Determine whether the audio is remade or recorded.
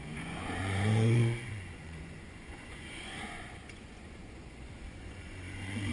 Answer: remade